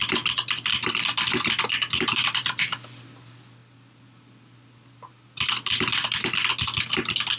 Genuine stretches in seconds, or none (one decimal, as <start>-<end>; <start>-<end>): 0.0-7.4